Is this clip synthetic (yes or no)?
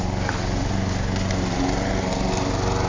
no